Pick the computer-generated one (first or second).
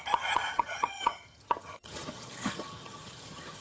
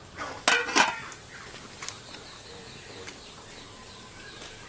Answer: first